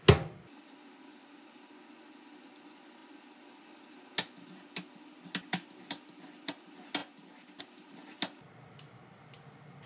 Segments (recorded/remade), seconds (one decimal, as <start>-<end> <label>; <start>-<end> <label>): 0.0-9.9 recorded